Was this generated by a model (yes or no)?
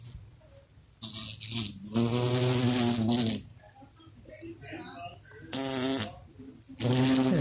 no